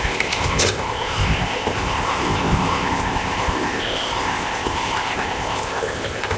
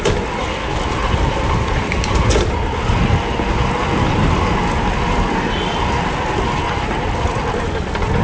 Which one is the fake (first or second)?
first